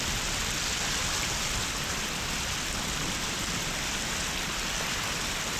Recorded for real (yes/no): yes